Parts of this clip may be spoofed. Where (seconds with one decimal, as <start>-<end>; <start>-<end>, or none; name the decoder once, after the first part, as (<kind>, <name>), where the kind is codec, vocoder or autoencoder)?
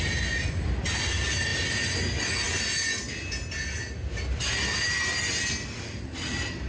none